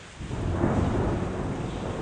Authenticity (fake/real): real